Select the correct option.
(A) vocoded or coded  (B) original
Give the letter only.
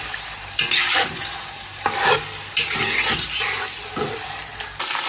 B